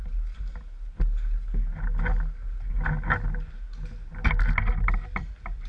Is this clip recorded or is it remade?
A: recorded